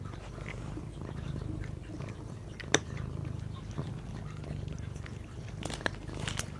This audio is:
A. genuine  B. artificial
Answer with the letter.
A